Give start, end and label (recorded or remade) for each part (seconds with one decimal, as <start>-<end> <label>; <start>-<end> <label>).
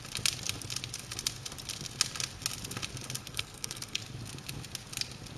0.0-3.2 recorded; 3.2-4.0 remade; 4.0-5.4 recorded